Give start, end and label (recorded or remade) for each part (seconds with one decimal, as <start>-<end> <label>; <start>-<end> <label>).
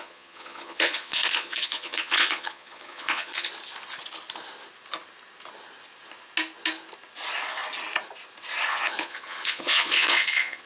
0.0-3.5 remade; 3.5-8.7 recorded; 8.7-10.7 remade